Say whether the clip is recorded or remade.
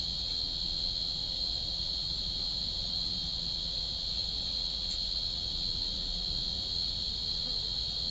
recorded